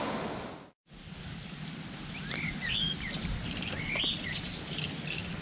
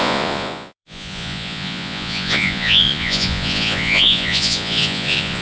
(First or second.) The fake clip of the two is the second